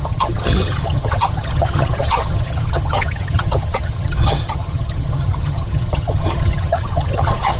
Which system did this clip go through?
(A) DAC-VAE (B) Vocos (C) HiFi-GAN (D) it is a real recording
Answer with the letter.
C